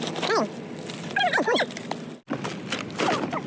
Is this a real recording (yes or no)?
yes